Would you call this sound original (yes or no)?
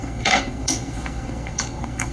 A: no